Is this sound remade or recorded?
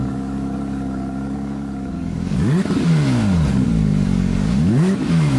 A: remade